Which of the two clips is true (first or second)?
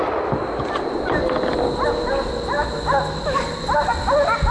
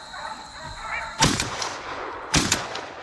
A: first